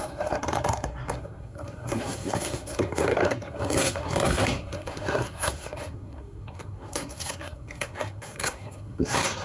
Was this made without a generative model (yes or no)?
no